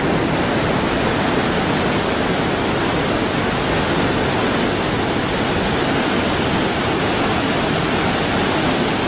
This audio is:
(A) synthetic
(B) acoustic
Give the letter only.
B